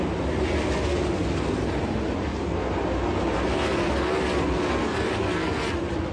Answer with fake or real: real